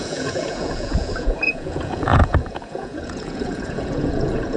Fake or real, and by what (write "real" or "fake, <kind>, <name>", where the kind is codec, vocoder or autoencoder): fake, vocoder, Vocos